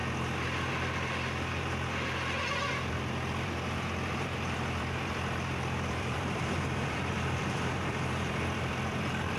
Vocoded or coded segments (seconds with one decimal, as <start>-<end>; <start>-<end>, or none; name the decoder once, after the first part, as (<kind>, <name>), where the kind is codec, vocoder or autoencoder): 2.9-9.4 (vocoder, BigVGAN v2)